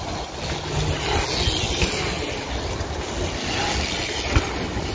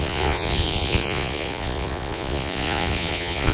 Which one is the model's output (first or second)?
second